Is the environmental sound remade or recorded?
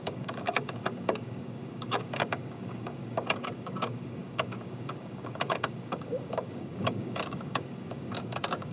remade